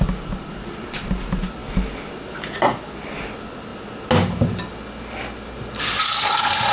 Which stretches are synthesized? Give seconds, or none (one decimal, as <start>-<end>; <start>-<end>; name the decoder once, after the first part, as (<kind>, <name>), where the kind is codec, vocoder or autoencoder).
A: none